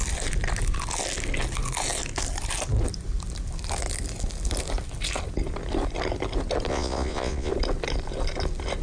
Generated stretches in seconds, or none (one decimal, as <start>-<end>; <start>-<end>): 6.7-7.5